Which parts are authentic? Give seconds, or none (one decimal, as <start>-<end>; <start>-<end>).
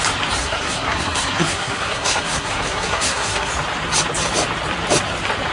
0.0-0.4; 3.5-5.5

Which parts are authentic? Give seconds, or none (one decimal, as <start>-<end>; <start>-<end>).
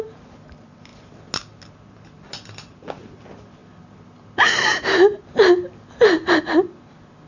0.0-7.3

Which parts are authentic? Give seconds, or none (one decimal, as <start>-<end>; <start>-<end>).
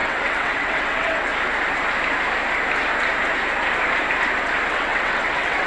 1.3-4.7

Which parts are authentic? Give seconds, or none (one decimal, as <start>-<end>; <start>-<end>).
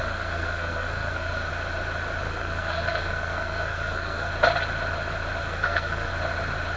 1.5-2.2; 4.3-5.4; 6.1-6.8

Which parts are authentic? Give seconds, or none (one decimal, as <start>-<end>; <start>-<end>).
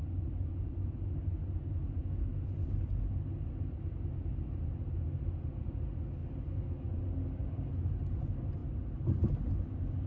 0.0-10.1